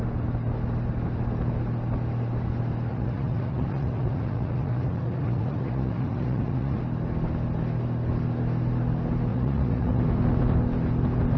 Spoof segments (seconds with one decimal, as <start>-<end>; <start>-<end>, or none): 2.9-6.8; 9.3-10.0